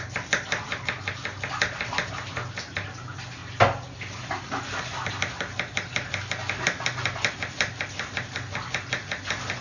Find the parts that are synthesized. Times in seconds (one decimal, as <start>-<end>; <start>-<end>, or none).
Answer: none